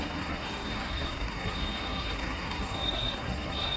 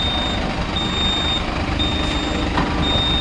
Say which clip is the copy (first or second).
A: first